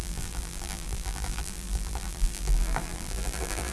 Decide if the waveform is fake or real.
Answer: fake